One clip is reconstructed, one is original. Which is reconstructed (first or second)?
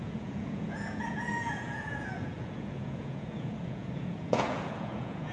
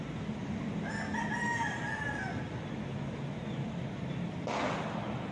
first